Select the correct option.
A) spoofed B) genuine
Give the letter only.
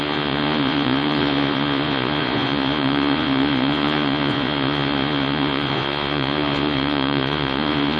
A